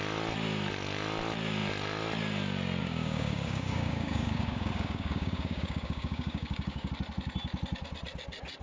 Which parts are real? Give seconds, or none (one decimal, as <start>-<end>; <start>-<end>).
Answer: 0.0-2.8; 6.9-8.6